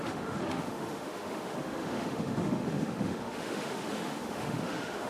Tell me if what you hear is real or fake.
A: fake